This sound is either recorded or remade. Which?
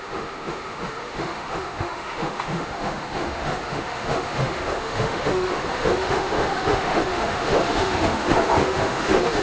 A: remade